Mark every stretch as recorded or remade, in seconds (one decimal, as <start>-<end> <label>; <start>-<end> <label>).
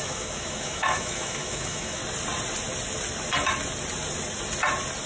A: 0.0-2.0 remade; 2.0-5.1 recorded